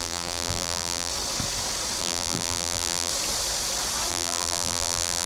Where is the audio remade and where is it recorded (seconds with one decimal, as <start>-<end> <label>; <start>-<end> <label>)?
0.0-1.1 remade; 1.1-2.0 recorded; 2.0-3.1 remade; 3.1-4.1 recorded; 4.1-5.3 remade